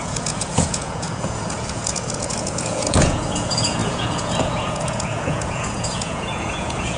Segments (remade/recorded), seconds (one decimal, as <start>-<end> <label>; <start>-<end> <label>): 0.0-7.0 remade